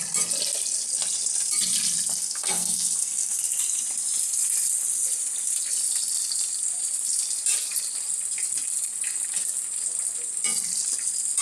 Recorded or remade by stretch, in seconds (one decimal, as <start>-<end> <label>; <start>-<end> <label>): 0.0-2.2 recorded; 2.2-3.4 remade; 3.4-11.4 recorded